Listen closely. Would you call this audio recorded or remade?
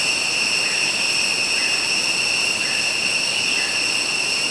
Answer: recorded